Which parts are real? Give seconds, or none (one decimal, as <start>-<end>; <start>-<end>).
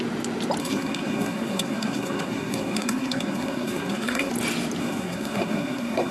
0.0-0.6; 4.3-4.8